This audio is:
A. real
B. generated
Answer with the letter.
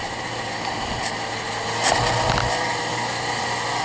A